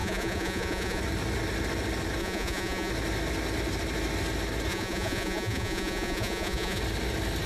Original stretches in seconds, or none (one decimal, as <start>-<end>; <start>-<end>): 1.0-2.2; 2.9-4.7; 6.8-7.5